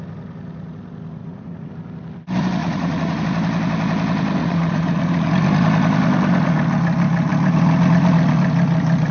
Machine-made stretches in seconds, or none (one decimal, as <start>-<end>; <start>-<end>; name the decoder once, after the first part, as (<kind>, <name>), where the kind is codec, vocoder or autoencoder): 1.2-1.7 (vocoder, Vocos); 2.6-3.2; 4.4-5.3